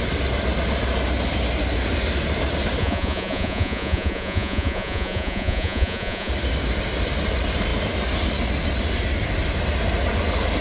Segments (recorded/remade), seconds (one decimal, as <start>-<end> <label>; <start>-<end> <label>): 0.0-2.8 recorded; 2.8-6.3 remade; 6.3-10.6 recorded